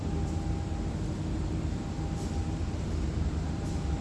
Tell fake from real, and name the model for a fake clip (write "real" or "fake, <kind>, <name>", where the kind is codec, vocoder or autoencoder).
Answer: fake, vocoder, BigVGAN v2